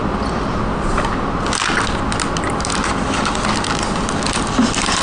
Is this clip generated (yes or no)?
no